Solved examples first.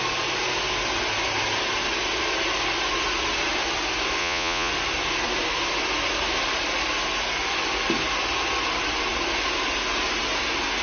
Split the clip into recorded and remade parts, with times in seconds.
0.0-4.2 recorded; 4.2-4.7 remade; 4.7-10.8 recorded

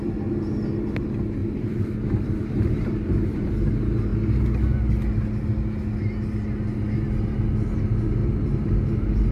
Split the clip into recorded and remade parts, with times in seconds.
0.0-1.4 recorded; 1.4-3.5 remade; 3.5-8.2 recorded; 8.2-8.7 remade; 8.7-9.3 recorded